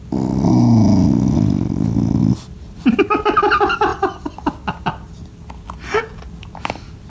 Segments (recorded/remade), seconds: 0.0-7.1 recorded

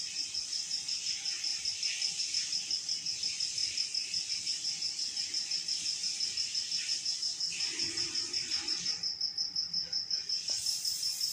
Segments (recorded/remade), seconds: 0.0-11.3 recorded

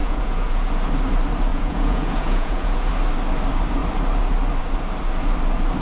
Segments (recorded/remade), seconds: 0.0-0.7 remade; 0.7-1.5 recorded; 1.5-2.9 remade; 2.9-5.8 recorded

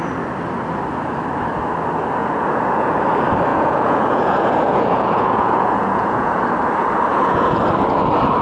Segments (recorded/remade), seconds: 0.0-2.2 recorded; 2.2-3.0 remade; 3.0-3.5 recorded; 3.5-6.4 remade; 6.4-7.1 recorded; 7.1-7.6 remade; 7.6-8.4 recorded

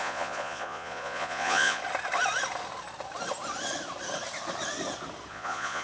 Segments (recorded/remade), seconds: 0.0-1.8 remade; 1.8-5.3 recorded; 5.3-5.8 remade

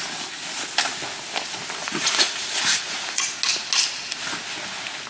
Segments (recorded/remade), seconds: 0.0-1.8 recorded; 1.8-3.4 remade; 3.4-5.1 recorded

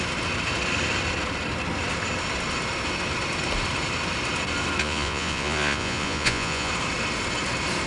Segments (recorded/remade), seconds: 0.0-4.8 recorded; 4.8-6.7 remade; 6.7-7.9 recorded